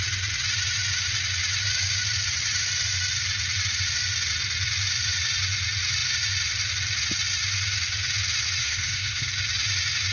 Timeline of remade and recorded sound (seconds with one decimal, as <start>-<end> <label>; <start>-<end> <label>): 0.0-8.6 recorded; 8.6-9.3 remade; 9.3-10.1 recorded